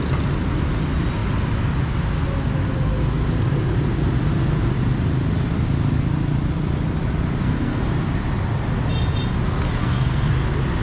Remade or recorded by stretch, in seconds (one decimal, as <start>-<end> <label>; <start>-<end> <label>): 0.0-7.4 recorded; 7.4-7.9 remade; 7.9-9.8 recorded; 9.8-10.3 remade; 10.3-10.8 recorded